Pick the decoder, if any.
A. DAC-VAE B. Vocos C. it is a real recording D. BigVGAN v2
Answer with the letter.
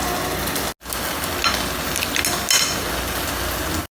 C